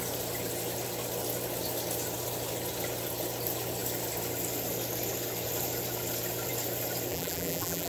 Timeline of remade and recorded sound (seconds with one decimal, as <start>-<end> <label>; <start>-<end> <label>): 0.0-7.1 recorded; 7.1-7.9 remade